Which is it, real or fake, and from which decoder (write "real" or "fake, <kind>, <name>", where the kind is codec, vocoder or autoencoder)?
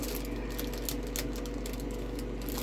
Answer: real